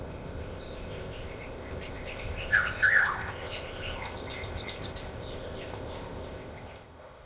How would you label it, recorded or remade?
remade